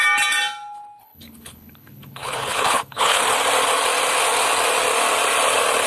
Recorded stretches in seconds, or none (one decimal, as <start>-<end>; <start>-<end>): 0.0-1.0; 3.2-5.9